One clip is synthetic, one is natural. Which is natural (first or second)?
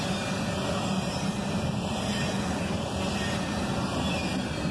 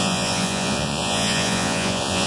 first